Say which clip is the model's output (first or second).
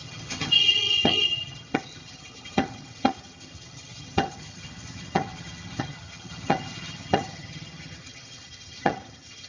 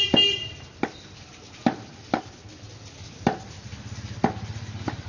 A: first